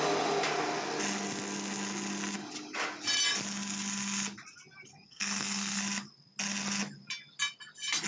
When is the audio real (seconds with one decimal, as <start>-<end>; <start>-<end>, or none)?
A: 0.0-4.9; 5.8-8.1